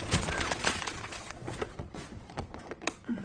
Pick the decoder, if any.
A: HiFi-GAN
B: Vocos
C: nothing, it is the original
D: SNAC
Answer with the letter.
B